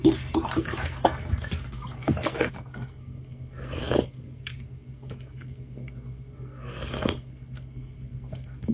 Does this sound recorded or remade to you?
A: remade